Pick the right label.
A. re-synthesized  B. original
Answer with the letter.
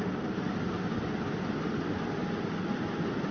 B